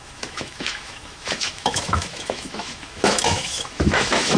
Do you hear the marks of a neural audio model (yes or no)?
yes